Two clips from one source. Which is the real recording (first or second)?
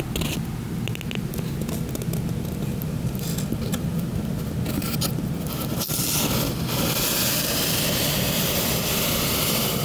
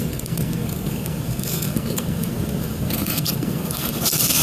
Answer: first